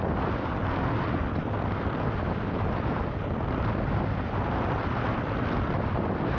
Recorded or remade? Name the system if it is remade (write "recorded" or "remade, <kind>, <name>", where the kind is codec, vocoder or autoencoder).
recorded